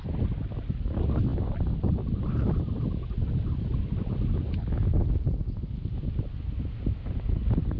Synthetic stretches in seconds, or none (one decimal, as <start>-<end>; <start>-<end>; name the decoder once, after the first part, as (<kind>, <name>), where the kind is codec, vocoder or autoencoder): none